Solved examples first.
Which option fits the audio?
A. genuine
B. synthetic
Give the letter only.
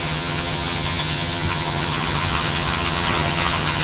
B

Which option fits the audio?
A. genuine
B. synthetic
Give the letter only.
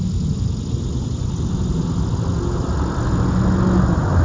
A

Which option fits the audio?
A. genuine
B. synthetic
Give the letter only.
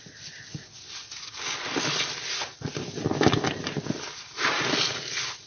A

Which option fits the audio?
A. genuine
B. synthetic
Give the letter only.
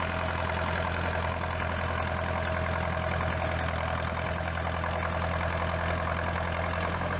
A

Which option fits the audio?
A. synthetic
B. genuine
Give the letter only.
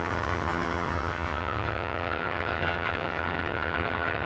A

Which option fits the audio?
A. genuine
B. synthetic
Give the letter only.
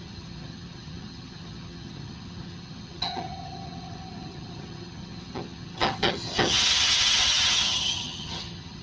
B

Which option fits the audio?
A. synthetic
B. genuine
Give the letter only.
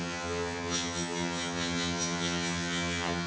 A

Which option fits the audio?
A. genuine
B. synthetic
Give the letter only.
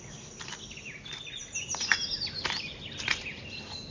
A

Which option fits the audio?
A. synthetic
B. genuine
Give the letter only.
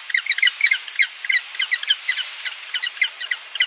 B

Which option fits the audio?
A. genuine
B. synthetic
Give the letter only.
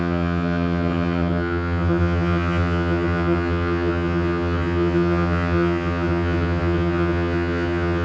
B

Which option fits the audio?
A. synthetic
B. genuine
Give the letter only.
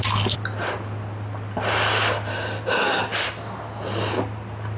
B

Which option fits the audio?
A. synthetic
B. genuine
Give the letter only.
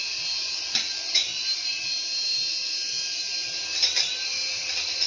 B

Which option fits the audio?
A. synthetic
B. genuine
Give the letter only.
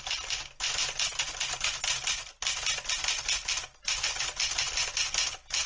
B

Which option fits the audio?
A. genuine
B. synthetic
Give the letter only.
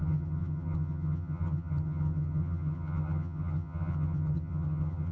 B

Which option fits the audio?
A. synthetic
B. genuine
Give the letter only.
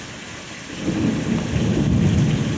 B